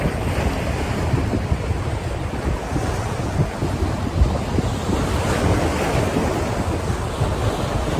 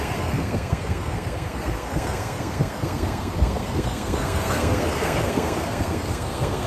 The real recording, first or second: first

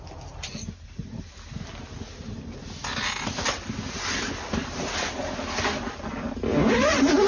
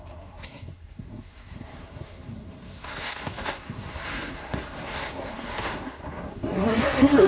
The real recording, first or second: first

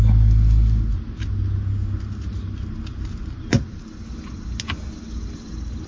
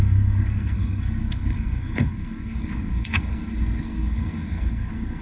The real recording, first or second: first